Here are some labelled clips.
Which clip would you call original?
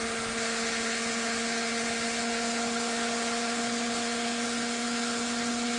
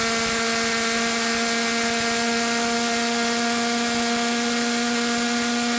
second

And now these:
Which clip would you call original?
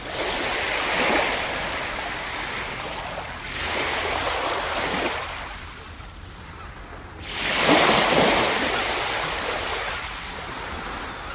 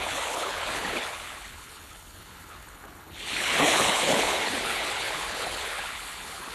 first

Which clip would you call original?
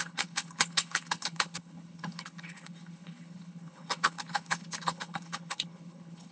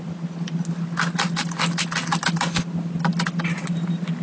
second